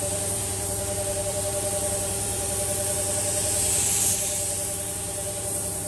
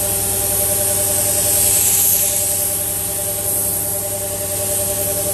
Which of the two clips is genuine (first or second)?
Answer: second